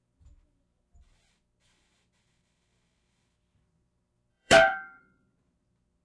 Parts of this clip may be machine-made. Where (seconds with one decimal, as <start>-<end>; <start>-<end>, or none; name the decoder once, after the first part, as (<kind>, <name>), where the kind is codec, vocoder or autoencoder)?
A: 4.3-5.0 (codec, SNAC)